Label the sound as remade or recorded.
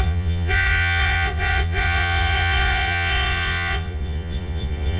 remade